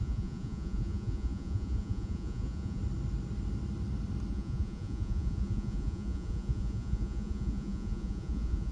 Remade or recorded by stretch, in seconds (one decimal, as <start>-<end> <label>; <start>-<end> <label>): 0.0-2.8 remade; 2.8-4.3 recorded; 4.3-8.7 remade